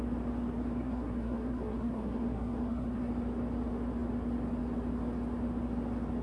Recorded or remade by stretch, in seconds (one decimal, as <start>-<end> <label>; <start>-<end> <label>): 0.0-0.8 recorded; 0.8-3.1 remade; 3.1-6.2 recorded